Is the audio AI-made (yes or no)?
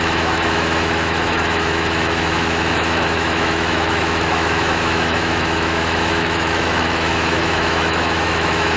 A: yes